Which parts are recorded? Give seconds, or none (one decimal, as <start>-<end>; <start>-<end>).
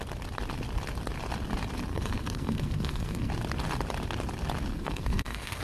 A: 0.0-1.9; 3.3-4.7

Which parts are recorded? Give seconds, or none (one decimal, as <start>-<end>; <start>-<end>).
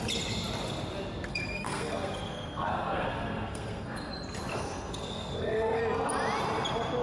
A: 0.0-1.3; 4.1-4.5; 5.8-7.0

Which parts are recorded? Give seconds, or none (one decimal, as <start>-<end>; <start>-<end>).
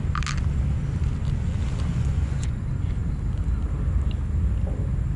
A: 0.0-1.9; 2.6-5.2